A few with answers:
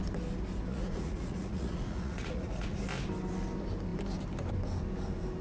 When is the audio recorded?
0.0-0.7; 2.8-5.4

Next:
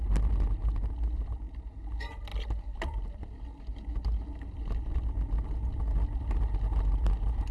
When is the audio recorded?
0.0-7.5

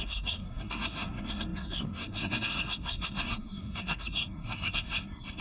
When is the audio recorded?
none

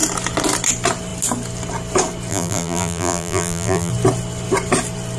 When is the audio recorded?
0.0-2.3; 3.9-5.2

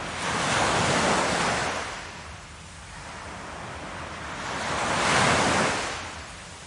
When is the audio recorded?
0.0-6.7

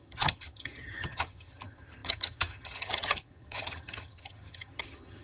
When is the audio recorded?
none

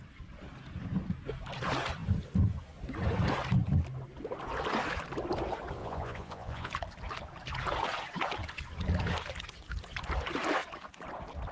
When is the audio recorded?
0.0-5.8; 6.7-11.5